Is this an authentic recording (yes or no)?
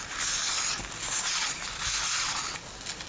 yes